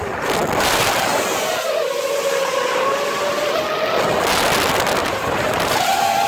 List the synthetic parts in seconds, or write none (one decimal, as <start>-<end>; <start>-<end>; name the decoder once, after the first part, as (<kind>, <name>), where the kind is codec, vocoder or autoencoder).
5.0-5.8 (vocoder, BigVGAN v2)